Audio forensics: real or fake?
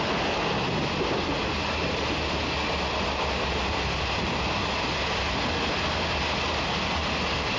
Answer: real